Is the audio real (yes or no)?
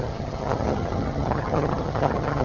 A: no